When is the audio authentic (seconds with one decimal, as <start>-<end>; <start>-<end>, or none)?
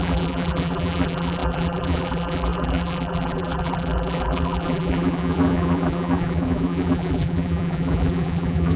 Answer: none